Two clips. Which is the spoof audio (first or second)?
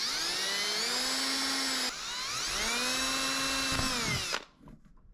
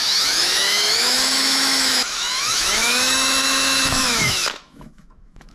second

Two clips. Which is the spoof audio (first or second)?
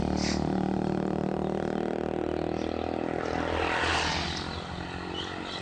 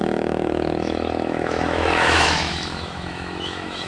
second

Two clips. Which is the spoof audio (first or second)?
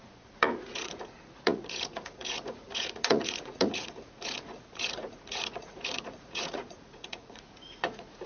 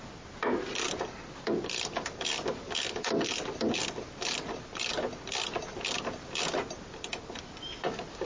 first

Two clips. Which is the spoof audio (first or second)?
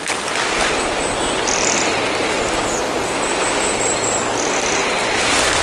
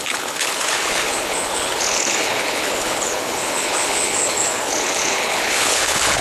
second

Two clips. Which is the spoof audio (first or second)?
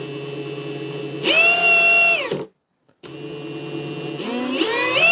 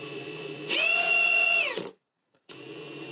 second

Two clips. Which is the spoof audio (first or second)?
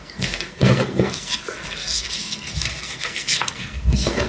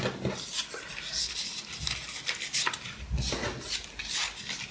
first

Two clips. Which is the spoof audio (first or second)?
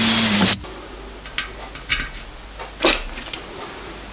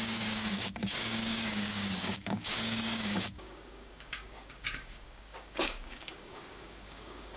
second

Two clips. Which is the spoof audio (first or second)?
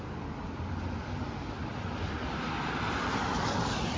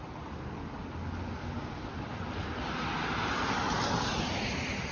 first